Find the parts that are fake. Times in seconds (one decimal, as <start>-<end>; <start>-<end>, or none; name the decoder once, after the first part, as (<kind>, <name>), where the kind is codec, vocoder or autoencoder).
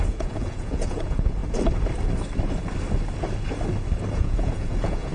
0.0-1.4 (vocoder, Vocos); 4.1-5.1